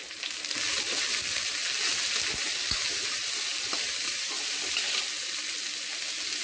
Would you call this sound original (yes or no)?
yes